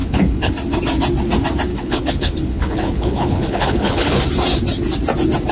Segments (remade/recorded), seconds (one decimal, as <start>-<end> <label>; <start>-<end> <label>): 0.0-0.5 remade; 0.5-1.7 recorded; 1.7-4.2 remade; 4.2-5.5 recorded